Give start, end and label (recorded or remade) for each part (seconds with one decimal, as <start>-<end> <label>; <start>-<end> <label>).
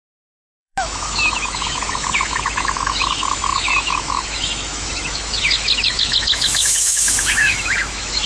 0.0-8.3 remade